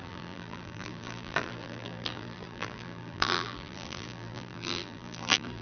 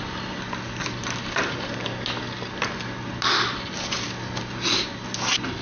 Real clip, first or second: second